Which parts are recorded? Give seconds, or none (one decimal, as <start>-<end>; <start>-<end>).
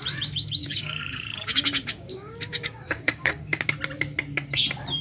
0.0-0.6; 3.6-5.0